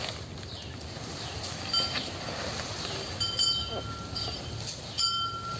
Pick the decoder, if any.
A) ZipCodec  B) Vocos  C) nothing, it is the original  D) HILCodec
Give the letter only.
C